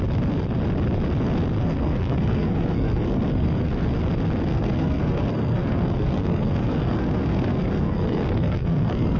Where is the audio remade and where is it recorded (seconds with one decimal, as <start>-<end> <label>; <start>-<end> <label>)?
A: 0.0-1.6 recorded; 1.6-4.0 remade; 4.0-4.5 recorded; 4.5-9.2 remade